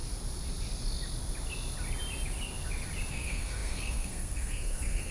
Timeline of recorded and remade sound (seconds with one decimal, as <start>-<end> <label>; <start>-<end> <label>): 0.0-3.1 recorded; 3.1-5.1 remade